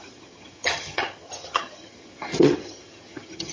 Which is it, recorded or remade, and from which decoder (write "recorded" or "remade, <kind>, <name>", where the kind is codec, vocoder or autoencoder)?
remade, vocoder, HiFi-GAN